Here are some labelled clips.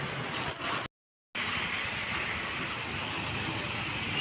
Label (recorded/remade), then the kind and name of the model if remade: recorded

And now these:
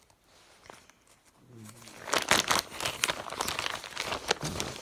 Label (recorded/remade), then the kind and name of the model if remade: recorded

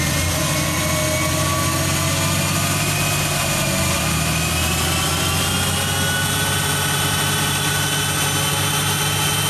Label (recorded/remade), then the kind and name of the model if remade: recorded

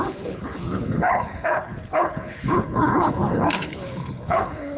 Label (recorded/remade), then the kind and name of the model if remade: remade, codec, HILCodec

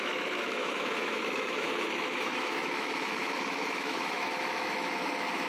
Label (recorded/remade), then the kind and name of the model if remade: remade, autoencoder, DAC-VAE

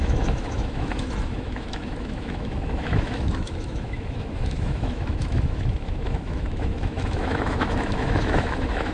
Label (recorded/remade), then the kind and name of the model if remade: remade, autoencoder, DAC-VAE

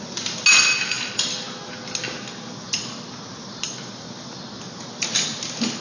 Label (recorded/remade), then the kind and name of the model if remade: recorded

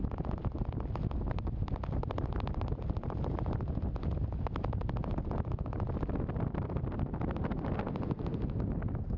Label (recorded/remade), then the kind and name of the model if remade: recorded